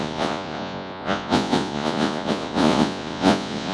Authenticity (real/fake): fake